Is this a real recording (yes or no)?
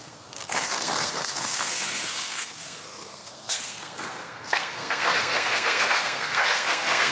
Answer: no